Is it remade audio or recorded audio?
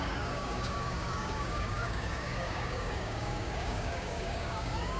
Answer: remade